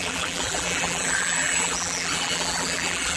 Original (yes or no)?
no